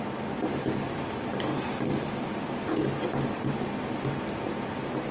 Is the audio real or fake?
real